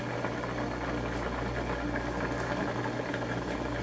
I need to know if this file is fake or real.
real